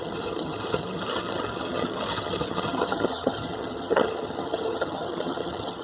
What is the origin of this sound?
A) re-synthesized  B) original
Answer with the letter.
A